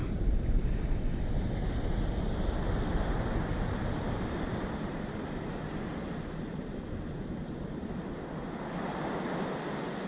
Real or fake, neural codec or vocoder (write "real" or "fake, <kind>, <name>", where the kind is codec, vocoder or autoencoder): real